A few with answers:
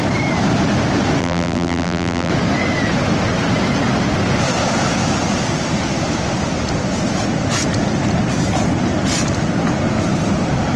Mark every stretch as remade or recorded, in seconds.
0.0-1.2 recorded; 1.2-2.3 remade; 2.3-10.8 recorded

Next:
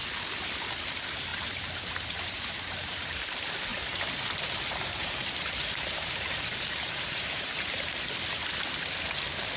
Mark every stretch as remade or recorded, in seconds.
0.0-1.3 recorded; 1.3-3.2 remade; 3.2-3.7 recorded; 3.7-8.1 remade; 8.1-9.6 recorded

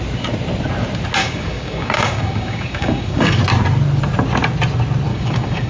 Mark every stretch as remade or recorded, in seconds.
0.0-1.2 recorded; 1.2-3.4 remade; 3.4-5.1 recorded; 5.1-5.7 remade